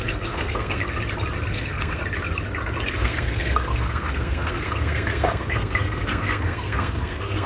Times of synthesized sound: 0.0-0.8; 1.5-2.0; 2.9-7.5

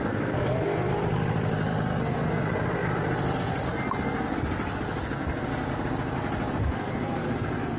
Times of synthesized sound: 0.0-0.9; 2.0-2.4; 5.0-5.5; 6.6-7.8

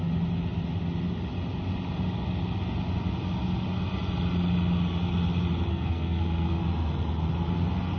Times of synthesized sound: 5.7-6.6

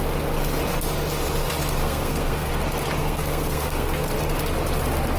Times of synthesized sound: 1.8-2.5; 3.0-4.1